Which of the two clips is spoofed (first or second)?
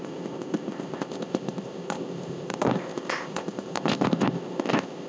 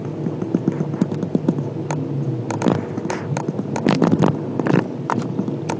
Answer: first